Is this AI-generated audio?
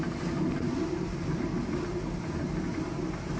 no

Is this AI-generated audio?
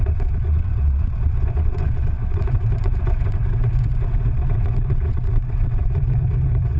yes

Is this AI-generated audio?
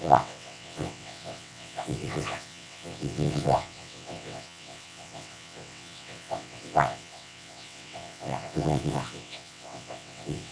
yes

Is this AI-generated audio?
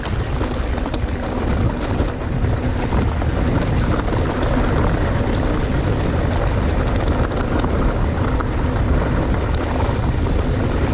no